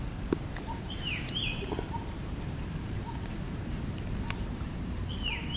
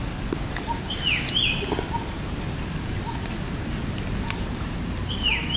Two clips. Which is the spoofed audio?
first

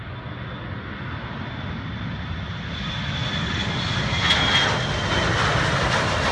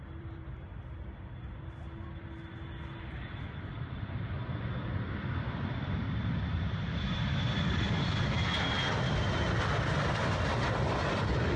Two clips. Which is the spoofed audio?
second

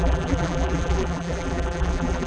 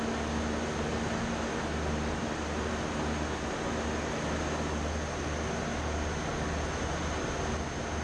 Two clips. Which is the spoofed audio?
first